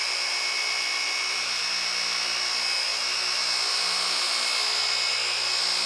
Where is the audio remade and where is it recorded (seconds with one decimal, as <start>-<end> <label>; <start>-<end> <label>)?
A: 0.0-5.9 recorded